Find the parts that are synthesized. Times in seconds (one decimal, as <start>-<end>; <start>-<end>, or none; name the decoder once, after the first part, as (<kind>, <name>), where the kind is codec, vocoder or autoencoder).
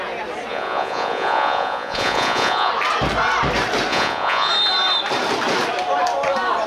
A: 0.5-2.7 (vocoder, Vocos); 3.9-4.5